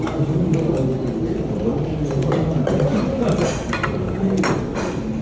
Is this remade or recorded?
recorded